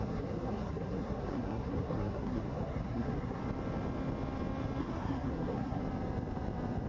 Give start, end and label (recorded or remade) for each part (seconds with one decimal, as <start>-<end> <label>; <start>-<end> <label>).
0.0-3.4 remade; 3.4-4.8 recorded; 4.8-5.8 remade; 5.8-6.9 recorded